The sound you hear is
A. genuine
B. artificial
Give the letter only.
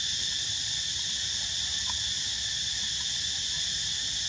A